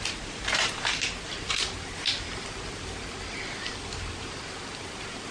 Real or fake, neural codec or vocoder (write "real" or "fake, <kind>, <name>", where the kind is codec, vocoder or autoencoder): real